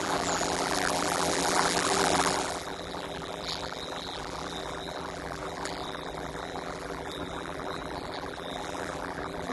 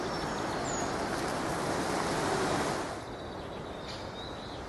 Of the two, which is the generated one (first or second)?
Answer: first